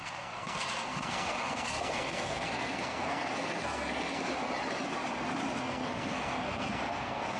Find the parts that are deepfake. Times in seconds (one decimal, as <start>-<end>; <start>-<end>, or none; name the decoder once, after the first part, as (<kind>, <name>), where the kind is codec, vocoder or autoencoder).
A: 0.0-4.3 (codec, SNAC); 5.6-7.4